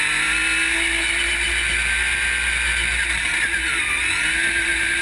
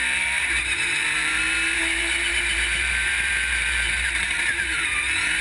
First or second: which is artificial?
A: second